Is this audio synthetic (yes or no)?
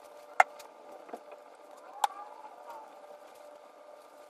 no